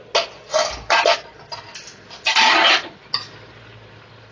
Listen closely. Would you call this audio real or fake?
real